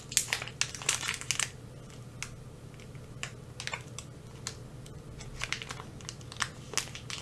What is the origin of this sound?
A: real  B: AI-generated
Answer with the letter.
A